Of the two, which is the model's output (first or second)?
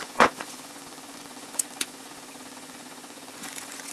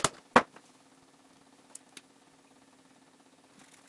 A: first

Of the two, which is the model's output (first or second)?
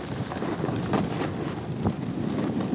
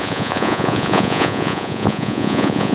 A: second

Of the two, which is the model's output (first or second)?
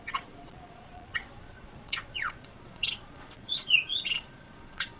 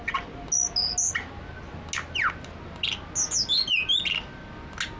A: first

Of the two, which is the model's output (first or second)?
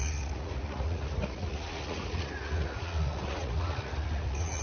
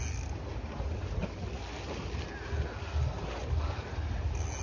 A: first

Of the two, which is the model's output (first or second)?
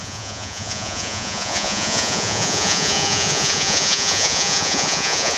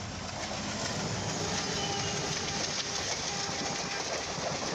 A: first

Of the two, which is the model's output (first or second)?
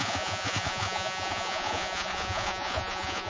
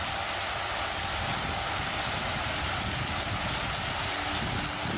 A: first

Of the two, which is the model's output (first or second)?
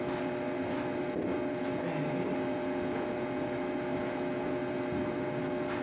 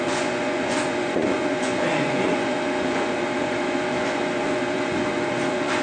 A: second